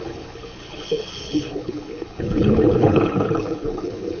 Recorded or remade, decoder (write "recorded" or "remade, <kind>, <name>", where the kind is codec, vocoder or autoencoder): remade, codec, HILCodec